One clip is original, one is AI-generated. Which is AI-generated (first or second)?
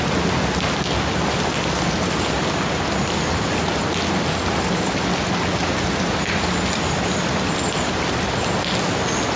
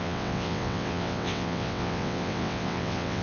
second